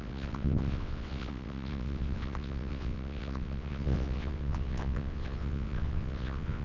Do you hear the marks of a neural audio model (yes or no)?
yes